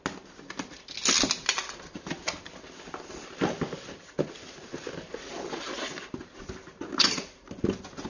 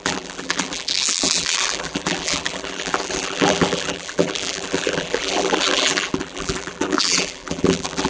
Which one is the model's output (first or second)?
second